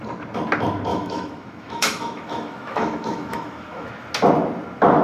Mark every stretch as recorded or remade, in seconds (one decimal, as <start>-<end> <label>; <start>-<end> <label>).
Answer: 0.0-0.9 recorded; 0.9-3.9 remade; 3.9-5.0 recorded